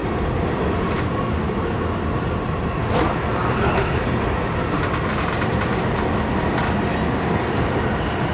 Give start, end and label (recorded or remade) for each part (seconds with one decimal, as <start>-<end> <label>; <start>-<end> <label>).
0.0-8.3 recorded